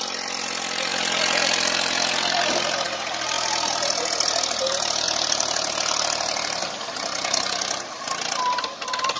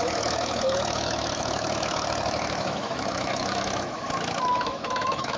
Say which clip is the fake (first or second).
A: second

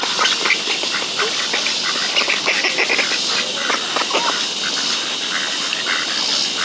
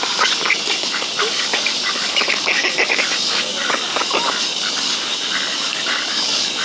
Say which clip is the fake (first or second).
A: second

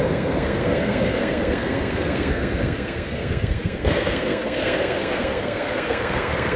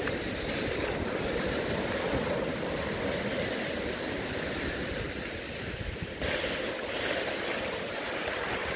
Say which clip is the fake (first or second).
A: first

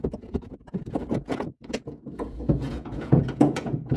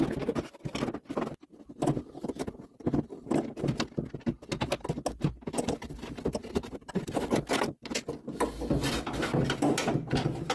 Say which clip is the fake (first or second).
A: first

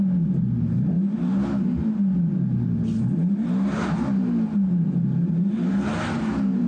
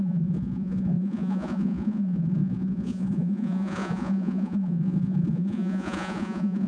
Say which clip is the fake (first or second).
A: second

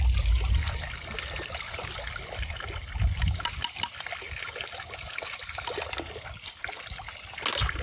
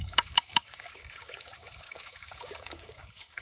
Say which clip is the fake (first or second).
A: second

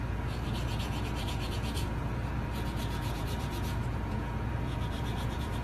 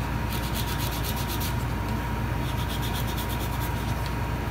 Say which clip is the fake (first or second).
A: first